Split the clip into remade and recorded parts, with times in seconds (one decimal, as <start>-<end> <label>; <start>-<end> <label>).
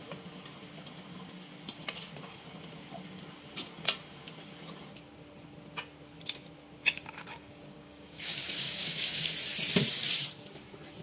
0.0-6.8 recorded; 6.8-9.3 remade; 9.3-11.0 recorded